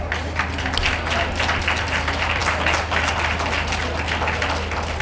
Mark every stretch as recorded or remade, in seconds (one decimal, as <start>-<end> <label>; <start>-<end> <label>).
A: 0.0-5.0 recorded